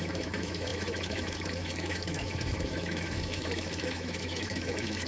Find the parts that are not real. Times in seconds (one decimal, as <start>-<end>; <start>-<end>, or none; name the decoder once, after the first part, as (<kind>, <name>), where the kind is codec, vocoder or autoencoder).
0.0-5.1 (autoencoder, DAC-VAE)